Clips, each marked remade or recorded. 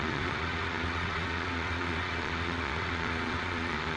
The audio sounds remade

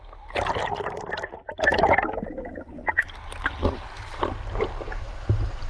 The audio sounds recorded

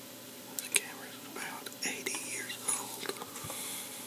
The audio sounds recorded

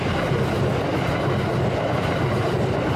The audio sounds recorded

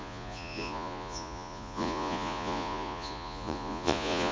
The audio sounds remade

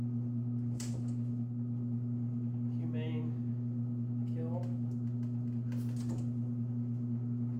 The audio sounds recorded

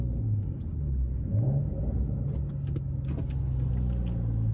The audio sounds recorded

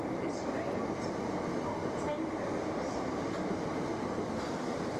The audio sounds recorded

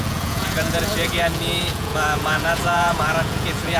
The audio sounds remade